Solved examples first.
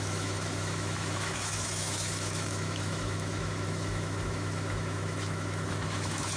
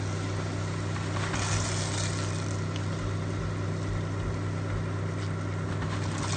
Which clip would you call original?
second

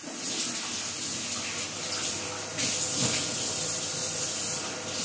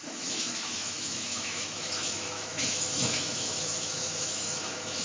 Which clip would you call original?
first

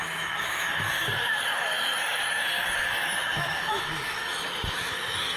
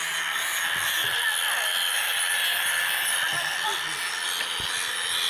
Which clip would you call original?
second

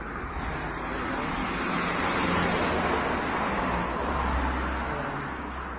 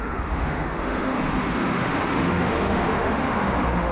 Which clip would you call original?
first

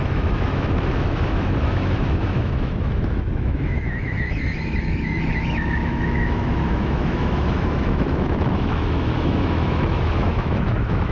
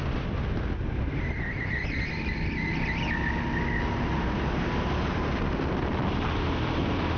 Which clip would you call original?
second